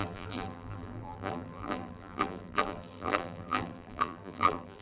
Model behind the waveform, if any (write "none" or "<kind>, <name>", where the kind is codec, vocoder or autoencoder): vocoder, BigVGAN v2